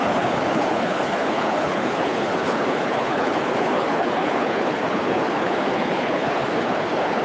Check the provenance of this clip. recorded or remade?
remade